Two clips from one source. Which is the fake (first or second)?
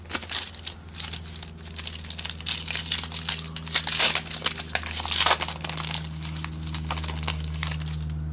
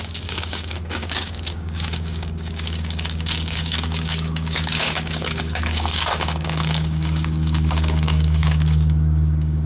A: second